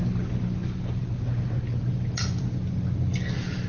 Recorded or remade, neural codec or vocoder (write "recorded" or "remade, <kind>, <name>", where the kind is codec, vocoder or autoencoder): recorded